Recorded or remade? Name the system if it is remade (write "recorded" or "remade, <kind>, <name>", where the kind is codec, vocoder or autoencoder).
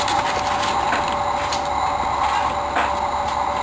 recorded